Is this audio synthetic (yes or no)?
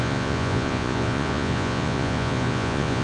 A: yes